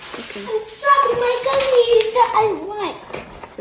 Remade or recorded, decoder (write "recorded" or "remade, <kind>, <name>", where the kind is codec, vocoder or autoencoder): recorded